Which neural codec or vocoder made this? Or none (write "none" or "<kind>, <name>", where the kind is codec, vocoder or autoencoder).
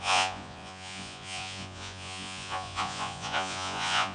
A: vocoder, Vocos